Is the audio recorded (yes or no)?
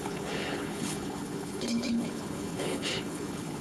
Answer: no